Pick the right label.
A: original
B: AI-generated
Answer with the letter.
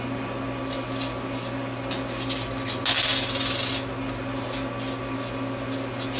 A